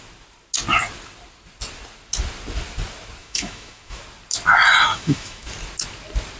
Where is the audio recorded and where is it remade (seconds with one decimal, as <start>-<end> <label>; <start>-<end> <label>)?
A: 0.0-3.2 recorded; 3.2-4.0 remade; 4.0-4.9 recorded; 4.9-5.5 remade; 5.5-6.4 recorded